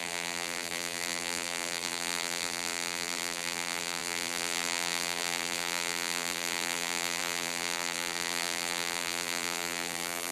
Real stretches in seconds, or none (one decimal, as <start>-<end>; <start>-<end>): none